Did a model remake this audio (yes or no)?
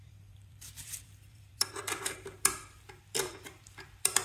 yes